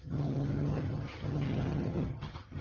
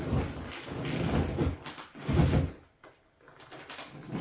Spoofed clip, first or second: first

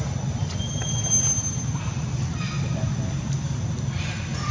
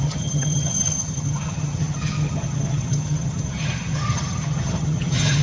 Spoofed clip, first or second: second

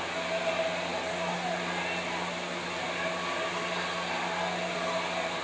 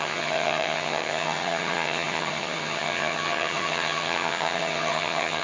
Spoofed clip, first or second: second